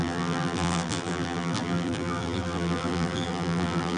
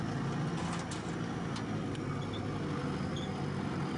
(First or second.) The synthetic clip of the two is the first